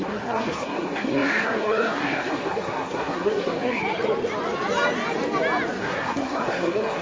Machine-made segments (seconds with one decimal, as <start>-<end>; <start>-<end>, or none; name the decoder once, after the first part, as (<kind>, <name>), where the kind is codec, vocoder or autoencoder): 0.0-3.8 (codec, SNAC); 5.8-7.0